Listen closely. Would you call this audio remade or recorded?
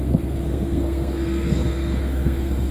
remade